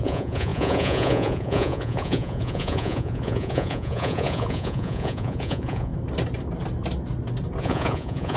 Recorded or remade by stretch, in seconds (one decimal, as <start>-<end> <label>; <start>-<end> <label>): 0.0-5.9 remade; 5.9-7.6 recorded; 7.6-8.4 remade